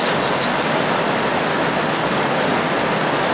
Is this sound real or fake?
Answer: real